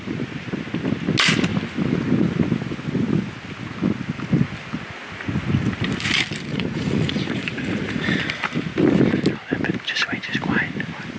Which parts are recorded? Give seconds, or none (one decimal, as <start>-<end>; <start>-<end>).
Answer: 0.0-6.5; 8.2-11.2